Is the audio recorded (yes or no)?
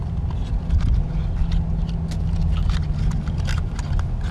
yes